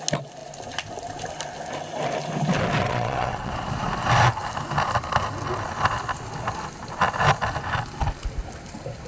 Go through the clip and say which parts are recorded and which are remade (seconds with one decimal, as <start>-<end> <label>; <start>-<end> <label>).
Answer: 0.0-2.8 recorded; 2.8-3.5 remade; 3.5-9.1 recorded